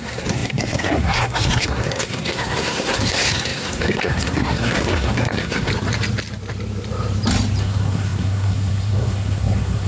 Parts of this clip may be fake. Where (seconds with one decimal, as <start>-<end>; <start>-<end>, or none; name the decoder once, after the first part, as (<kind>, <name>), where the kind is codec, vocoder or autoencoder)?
0.0-5.7 (codec, SNAC); 7.6-9.9

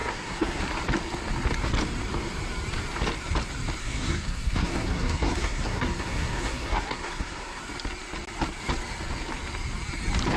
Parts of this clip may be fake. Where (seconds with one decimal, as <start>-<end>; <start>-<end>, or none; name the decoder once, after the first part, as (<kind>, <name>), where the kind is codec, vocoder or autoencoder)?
0.0-0.6 (codec, SNAC); 3.8-7.6

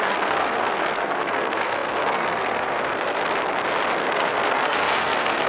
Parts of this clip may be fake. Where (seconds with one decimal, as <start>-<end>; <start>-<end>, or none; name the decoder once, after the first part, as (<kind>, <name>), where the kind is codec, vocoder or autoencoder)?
0.0-3.2 (codec, SNAC); 4.0-5.5

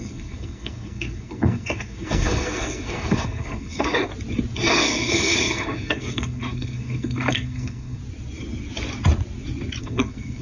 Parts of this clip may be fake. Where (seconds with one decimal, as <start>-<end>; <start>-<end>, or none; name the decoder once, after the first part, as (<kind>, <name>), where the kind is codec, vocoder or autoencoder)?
0.0-4.1 (codec, SNAC); 4.7-8.0; 9.8-10.4